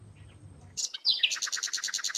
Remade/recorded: recorded